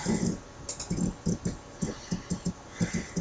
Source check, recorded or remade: recorded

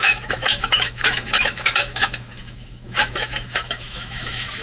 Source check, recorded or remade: remade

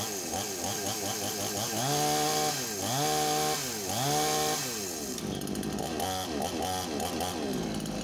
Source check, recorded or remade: recorded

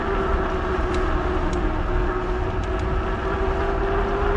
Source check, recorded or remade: recorded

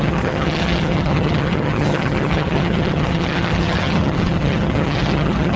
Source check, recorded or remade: remade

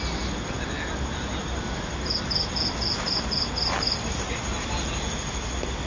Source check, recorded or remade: recorded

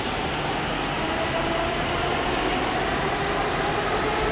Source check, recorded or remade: recorded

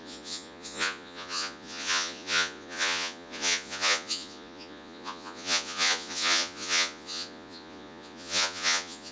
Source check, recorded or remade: remade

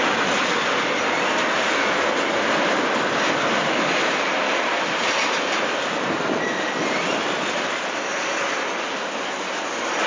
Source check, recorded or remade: recorded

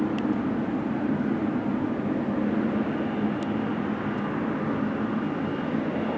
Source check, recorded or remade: recorded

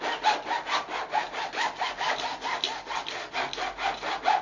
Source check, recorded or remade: recorded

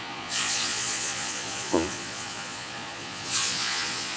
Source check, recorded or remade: remade